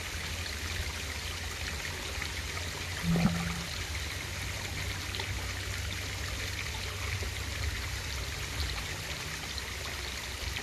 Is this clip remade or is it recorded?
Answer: recorded